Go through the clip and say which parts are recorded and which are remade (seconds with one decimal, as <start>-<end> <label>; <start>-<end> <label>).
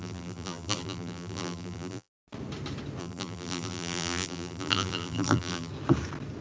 0.0-2.2 remade; 2.2-3.0 recorded; 3.0-5.7 remade; 5.7-6.4 recorded